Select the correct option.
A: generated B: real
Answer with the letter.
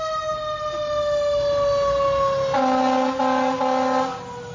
B